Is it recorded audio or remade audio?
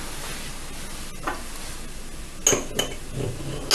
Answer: recorded